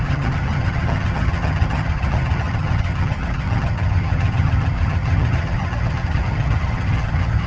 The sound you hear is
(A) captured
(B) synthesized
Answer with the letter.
B